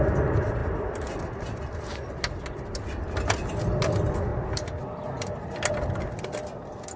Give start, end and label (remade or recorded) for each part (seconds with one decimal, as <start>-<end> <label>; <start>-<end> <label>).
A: 0.0-7.0 recorded